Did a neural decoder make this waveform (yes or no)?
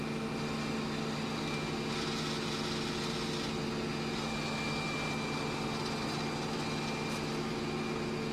no